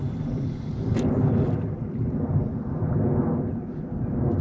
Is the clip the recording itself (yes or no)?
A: yes